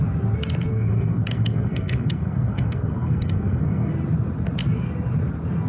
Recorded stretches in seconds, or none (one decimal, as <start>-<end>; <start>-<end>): 0.0-0.7; 3.9-5.7